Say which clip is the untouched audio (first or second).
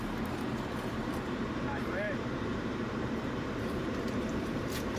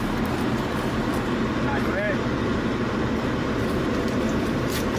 second